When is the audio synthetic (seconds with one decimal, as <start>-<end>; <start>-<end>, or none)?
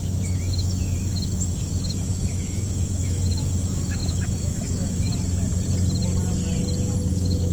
0.0-5.1; 7.1-7.5